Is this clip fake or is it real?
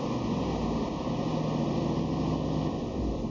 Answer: real